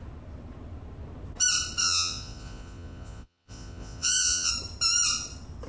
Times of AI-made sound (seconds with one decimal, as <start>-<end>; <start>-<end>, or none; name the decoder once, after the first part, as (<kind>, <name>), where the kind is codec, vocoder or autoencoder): 1.8-4.5 (vocoder, Vocos)